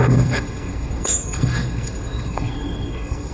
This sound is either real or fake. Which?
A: fake